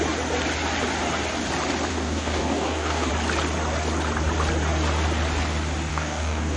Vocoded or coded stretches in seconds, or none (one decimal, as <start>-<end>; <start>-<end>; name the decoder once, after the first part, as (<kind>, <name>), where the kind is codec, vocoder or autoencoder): 1.9-3.1 (codec, DAC); 5.9-6.6